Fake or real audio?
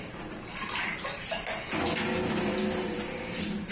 real